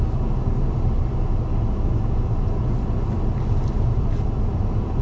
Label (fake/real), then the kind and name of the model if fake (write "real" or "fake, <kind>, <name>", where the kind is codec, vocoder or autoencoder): real